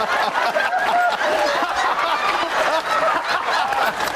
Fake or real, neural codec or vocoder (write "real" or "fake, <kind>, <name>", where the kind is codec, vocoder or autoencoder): real